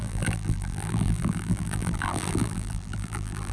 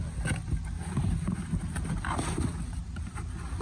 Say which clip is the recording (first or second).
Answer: second